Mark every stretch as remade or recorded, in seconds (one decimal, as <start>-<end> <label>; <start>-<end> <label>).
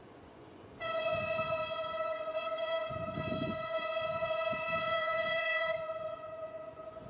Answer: 0.0-7.1 remade